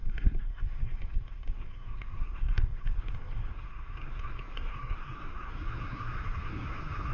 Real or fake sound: fake